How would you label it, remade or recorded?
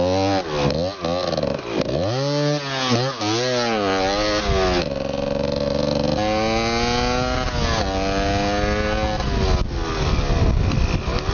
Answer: recorded